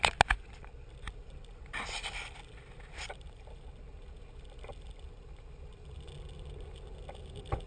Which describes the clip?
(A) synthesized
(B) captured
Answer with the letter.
B